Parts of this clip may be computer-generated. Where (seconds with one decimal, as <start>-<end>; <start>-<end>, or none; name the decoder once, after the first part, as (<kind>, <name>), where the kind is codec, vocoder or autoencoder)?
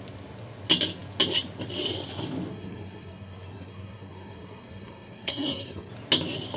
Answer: 2.5-5.9 (codec, SNAC)